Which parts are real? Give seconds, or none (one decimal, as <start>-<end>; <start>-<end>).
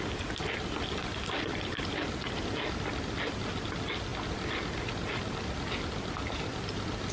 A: 0.0-7.1